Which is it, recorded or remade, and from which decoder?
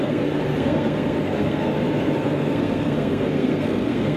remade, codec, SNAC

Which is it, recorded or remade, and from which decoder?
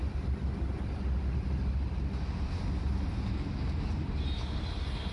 recorded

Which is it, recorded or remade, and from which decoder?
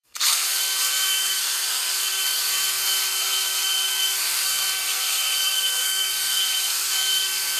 remade, codec, SNAC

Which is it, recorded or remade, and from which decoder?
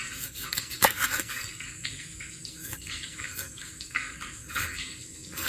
remade, codec, SNAC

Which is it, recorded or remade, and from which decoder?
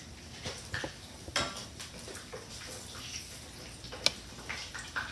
recorded